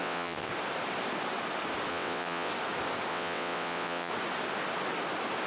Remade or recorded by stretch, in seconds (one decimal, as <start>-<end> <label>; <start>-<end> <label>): 0.0-0.5 remade; 0.5-1.9 recorded; 1.9-2.5 remade; 2.5-3.1 recorded; 3.1-4.1 remade; 4.1-5.5 recorded